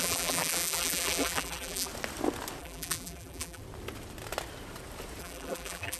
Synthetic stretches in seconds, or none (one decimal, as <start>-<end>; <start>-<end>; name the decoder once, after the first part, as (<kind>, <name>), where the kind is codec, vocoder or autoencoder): 0.0-1.9 (vocoder, BigVGAN v2); 2.6-3.6; 5.2-6.0